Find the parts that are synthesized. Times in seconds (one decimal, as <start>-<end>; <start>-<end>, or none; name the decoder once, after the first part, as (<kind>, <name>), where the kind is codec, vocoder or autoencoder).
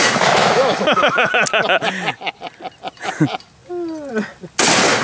0.4-1.3 (autoencoder, DAC-VAE)